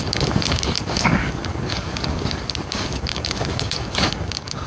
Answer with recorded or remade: remade